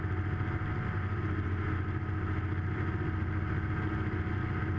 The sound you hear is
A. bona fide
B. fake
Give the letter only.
A